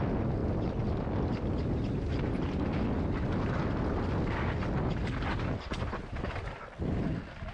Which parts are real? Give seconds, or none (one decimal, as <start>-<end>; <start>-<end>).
0.0-7.5